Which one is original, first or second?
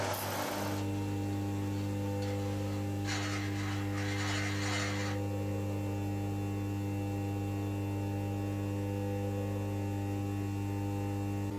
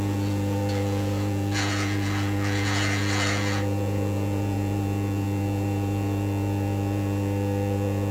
first